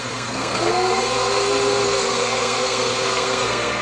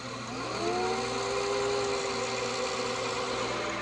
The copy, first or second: first